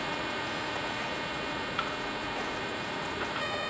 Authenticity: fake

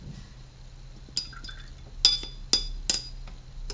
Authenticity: real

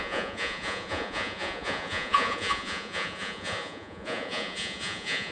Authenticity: fake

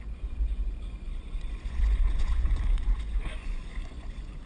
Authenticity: fake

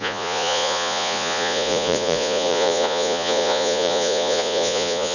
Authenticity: fake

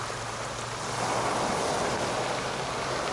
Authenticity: real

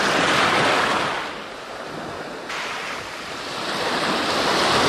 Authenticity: real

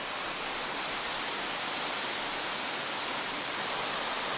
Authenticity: real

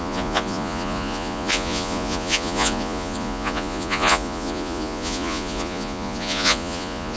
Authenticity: fake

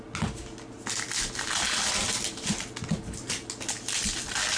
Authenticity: real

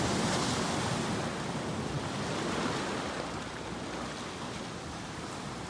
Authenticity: real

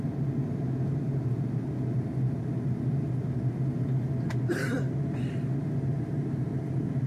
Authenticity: real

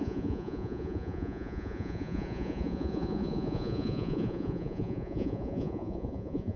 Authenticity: fake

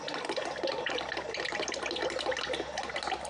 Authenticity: real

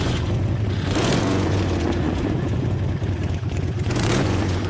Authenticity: fake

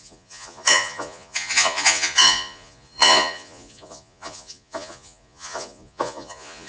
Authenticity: fake